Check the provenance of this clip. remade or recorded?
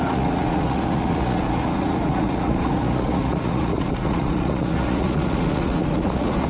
remade